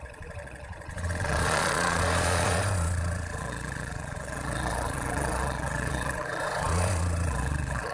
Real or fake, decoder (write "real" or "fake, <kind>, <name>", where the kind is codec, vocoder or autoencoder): fake, vocoder, Vocos